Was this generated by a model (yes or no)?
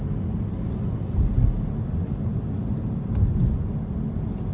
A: no